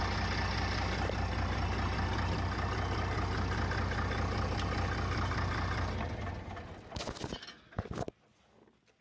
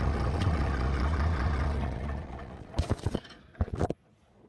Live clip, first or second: first